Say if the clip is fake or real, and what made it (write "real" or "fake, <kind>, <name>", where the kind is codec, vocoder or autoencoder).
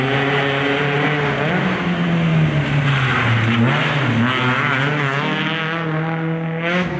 real